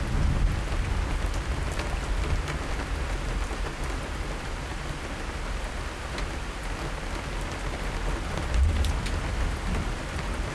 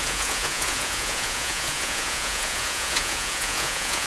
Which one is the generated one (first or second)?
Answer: second